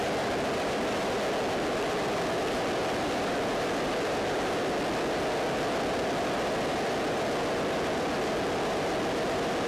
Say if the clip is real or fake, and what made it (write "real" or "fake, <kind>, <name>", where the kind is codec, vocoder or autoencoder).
real